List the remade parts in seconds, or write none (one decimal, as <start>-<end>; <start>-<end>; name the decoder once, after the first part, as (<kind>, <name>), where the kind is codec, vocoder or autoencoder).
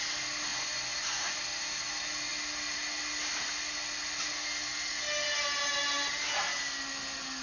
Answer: 0.5-1.4 (vocoder, Vocos)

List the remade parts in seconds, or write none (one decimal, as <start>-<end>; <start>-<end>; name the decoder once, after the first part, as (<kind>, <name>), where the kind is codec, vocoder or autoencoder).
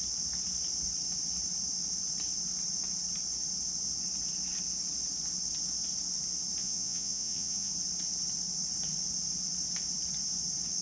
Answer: 6.6-7.7 (vocoder, Vocos)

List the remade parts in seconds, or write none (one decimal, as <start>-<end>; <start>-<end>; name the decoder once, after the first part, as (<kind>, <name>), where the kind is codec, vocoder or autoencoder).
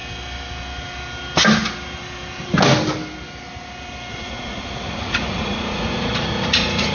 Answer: 4.1-6.9 (vocoder, Vocos)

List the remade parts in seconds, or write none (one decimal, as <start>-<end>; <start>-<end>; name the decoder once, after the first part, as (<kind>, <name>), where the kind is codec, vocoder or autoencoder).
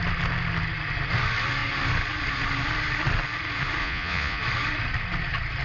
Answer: 3.8-4.4 (vocoder, Vocos)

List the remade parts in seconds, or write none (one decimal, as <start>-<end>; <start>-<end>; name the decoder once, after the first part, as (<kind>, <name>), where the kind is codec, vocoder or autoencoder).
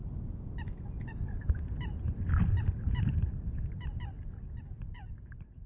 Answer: none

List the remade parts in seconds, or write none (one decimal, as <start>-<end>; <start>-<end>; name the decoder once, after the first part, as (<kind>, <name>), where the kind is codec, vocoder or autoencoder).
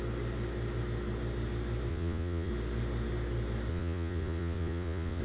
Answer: 1.9-2.5 (vocoder, Vocos); 3.7-5.2